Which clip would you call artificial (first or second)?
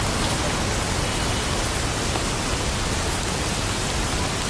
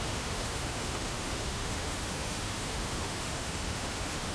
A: second